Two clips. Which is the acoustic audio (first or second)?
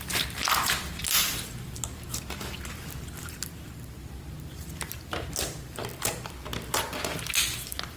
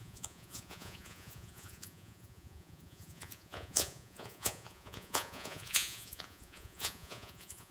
first